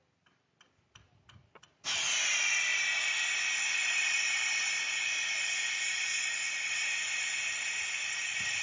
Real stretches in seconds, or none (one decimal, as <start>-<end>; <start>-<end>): 0.0-8.6